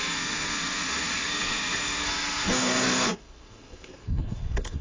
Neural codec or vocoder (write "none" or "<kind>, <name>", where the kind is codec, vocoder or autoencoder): codec, SNAC